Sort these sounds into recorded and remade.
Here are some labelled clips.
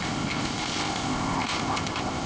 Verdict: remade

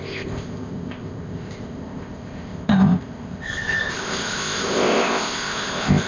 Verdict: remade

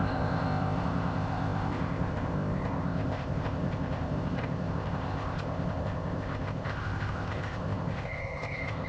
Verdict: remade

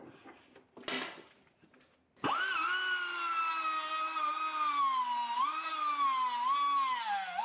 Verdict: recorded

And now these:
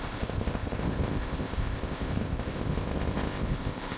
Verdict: remade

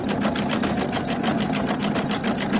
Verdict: recorded